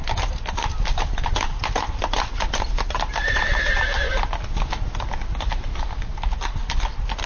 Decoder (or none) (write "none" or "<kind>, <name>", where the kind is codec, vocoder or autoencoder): none